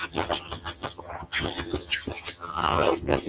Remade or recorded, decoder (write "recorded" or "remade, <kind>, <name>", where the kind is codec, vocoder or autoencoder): remade, vocoder, HiFi-GAN